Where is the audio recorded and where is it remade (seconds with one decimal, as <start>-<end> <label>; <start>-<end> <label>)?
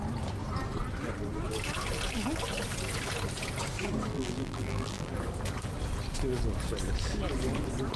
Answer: 0.0-4.1 recorded; 4.1-5.1 remade; 5.1-8.0 recorded